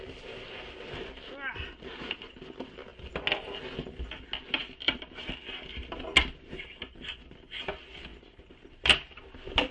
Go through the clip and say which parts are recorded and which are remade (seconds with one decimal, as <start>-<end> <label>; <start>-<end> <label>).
0.0-9.7 recorded